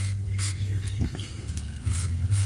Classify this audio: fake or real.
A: fake